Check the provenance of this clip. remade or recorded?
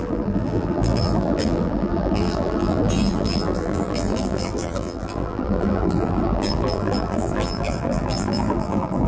remade